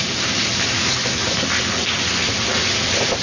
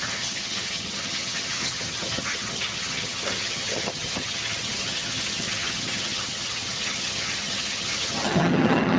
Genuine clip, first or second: first